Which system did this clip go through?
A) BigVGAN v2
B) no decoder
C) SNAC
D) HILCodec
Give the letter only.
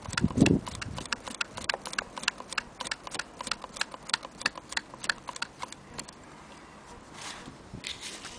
B